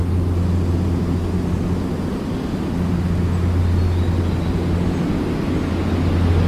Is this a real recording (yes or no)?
yes